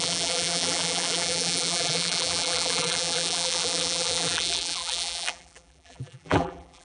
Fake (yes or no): yes